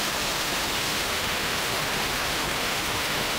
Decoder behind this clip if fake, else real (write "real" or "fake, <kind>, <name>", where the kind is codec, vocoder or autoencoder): fake, autoencoder, DAC-VAE